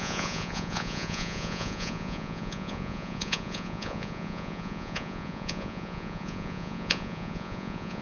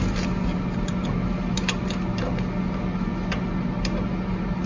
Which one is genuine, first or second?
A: second